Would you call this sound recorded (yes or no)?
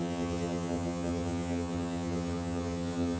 no